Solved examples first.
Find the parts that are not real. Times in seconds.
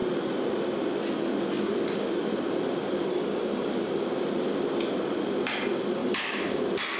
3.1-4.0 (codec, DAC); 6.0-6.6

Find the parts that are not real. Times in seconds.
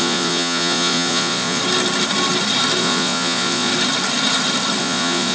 0.0-1.6 (vocoder, Vocos); 2.8-3.7; 4.8-5.3